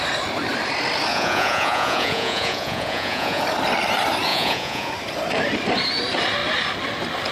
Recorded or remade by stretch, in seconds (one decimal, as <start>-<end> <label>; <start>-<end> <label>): 0.0-1.1 recorded; 1.1-3.4 remade; 3.4-4.3 recorded; 4.3-4.9 remade; 4.9-7.3 recorded